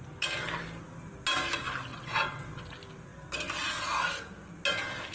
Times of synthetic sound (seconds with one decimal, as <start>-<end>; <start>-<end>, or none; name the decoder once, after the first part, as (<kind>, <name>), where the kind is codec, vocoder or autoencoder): 1.9-2.6 (vocoder, WaveNeXt)